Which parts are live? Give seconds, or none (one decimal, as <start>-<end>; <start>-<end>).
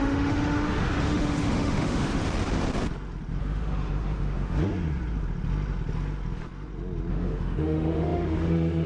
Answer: 2.2-3.4; 4.6-7.1